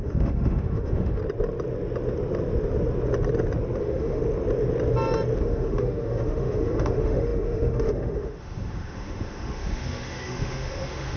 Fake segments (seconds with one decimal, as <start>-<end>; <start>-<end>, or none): 0.0-1.2; 3.8-4.2; 5.4-11.2